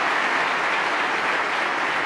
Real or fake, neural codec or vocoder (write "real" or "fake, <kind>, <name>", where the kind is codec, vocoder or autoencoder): real